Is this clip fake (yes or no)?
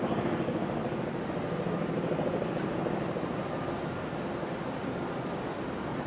no